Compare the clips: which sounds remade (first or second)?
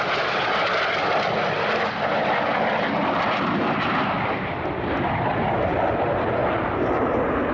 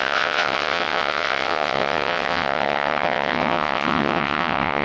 second